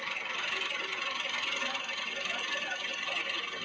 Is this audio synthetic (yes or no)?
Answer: no